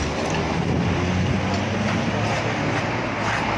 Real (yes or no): yes